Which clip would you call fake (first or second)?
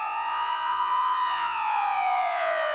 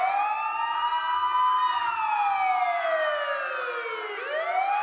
first